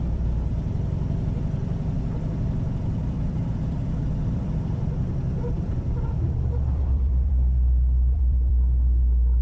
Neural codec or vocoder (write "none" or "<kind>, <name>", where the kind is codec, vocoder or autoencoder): vocoder, BigVGAN v2